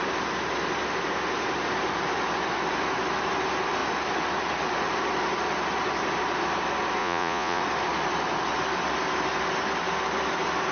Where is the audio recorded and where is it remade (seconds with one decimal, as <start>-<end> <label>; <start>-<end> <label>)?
0.0-7.0 recorded; 7.0-7.6 remade; 7.6-10.7 recorded